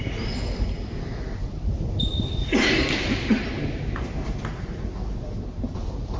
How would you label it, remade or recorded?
recorded